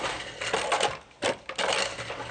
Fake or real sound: real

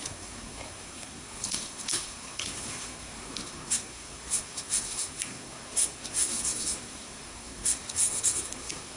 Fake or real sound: fake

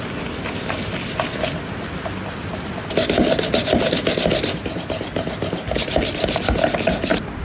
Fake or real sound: real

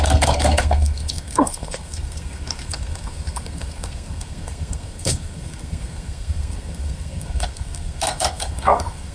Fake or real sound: fake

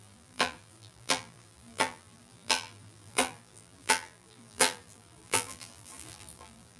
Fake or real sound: fake